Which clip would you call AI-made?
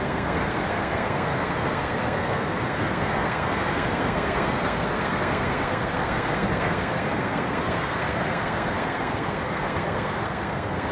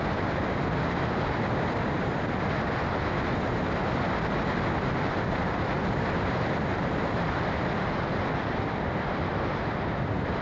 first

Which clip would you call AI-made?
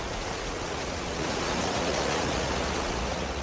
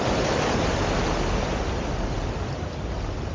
first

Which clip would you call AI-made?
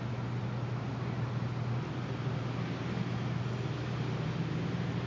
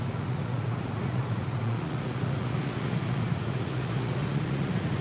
second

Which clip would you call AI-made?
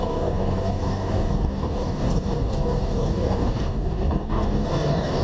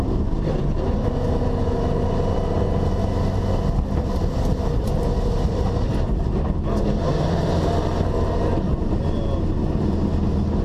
first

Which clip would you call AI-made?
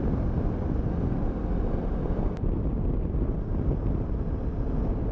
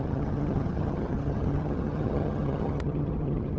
second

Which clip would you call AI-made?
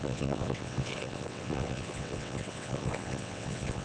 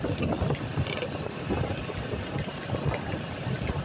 first